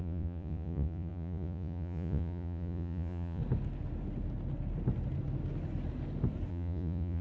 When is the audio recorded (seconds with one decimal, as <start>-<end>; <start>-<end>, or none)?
3.4-6.5